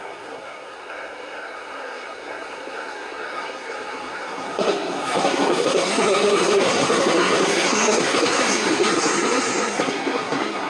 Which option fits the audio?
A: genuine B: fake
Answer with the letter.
B